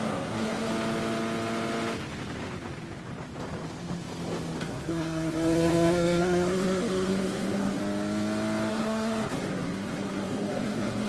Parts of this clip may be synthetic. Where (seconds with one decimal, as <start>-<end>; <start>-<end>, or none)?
0.0-0.7; 4.6-7.8; 8.7-11.1